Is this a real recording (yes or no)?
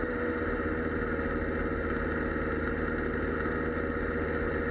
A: yes